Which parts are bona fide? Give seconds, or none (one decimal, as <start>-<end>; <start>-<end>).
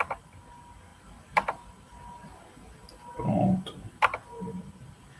0.0-5.2